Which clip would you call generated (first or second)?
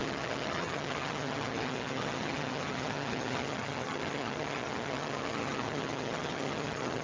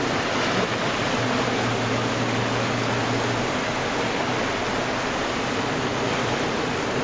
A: first